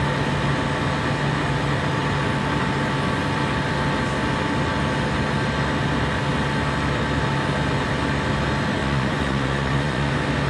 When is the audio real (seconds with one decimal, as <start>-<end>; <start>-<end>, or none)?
0.0-8.8; 10.1-10.5